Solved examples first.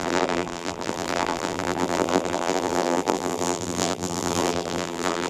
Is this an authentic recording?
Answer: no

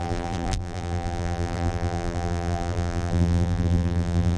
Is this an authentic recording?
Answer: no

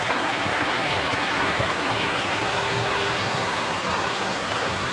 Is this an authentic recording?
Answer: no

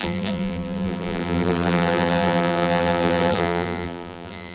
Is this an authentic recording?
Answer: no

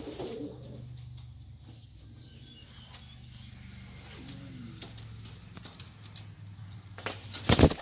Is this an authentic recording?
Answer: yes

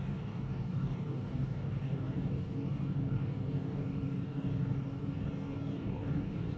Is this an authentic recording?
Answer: no